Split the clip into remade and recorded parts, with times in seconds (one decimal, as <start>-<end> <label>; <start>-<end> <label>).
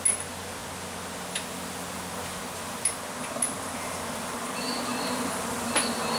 0.0-6.2 recorded